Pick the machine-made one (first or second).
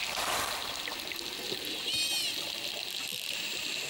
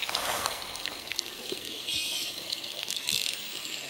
second